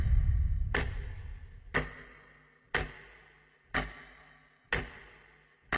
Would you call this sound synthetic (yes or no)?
no